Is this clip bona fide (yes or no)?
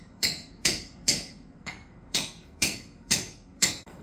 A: no